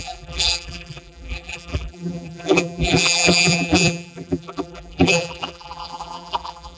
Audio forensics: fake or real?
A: fake